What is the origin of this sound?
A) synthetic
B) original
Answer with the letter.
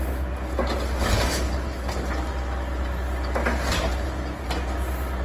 B